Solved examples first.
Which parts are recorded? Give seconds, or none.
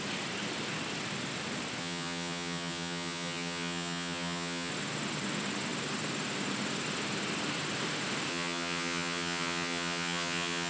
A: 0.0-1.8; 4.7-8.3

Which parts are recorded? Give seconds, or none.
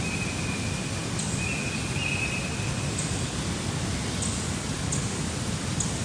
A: 0.0-6.0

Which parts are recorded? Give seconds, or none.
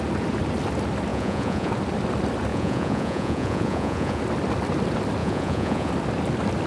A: 0.0-1.1; 1.7-2.5; 4.2-5.2; 5.9-6.7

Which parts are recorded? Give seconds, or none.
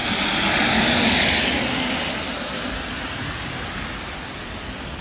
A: 0.0-5.0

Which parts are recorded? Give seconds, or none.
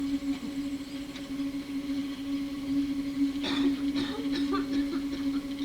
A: 0.0-5.6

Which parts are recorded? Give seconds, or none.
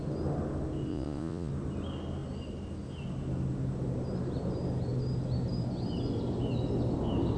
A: 0.0-0.9; 1.5-7.4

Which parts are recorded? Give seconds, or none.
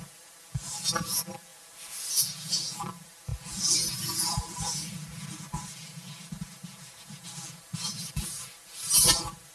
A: 1.5-2.2